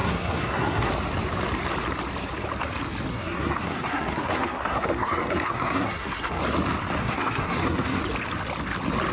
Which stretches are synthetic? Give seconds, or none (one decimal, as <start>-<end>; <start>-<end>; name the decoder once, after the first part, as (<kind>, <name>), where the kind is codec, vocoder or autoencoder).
0.0-0.9 (codec, SNAC); 3.1-6.4; 7.0-8.0